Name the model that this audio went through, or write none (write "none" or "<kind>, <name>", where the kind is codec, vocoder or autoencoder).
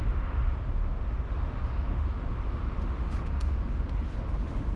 autoencoder, DAC-VAE